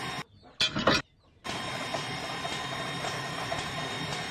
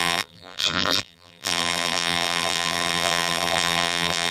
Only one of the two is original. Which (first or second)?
first